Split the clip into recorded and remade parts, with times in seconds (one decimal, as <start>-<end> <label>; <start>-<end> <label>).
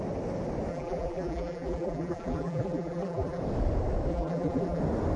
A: 0.0-0.7 recorded; 0.7-3.4 remade; 3.4-4.1 recorded; 4.1-4.8 remade; 4.8-5.2 recorded